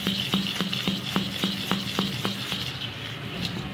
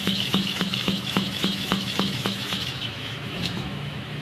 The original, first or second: first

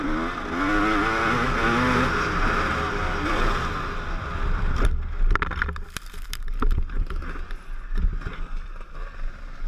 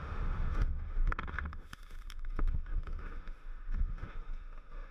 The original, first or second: first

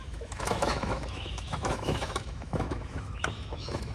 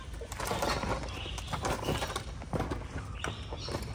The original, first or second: second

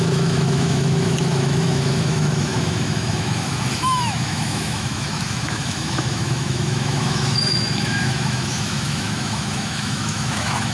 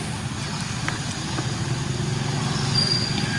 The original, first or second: second